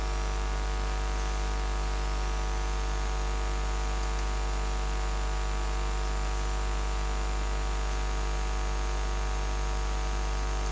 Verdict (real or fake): real